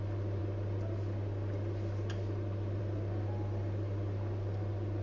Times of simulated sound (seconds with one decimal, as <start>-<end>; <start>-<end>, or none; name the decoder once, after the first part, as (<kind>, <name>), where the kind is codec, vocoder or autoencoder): none